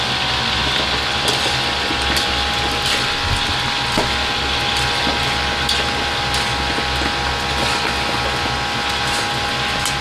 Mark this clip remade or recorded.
recorded